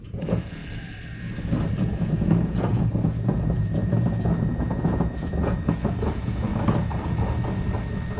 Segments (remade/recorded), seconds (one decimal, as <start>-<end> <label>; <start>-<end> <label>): 0.0-0.6 remade; 0.6-1.7 recorded; 1.7-6.5 remade; 6.5-8.2 recorded